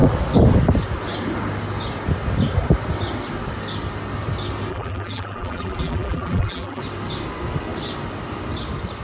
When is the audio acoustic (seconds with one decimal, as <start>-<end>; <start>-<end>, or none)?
0.0-4.7; 6.8-9.0